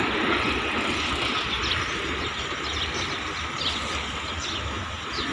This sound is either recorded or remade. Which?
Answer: recorded